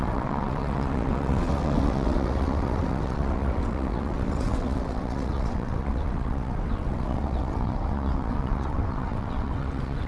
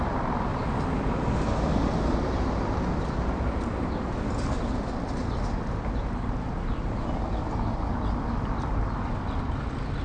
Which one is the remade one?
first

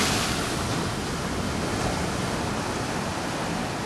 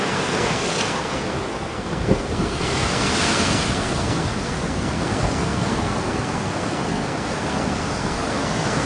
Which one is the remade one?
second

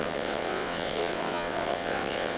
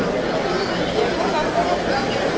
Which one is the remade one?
first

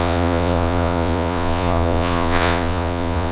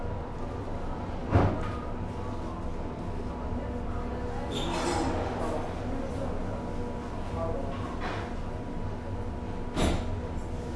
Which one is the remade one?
first